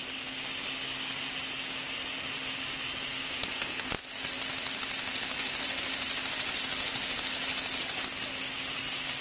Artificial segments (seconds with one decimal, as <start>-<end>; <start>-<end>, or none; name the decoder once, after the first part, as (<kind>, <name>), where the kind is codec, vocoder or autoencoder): none